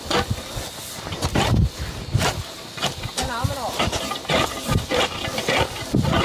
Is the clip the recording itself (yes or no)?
yes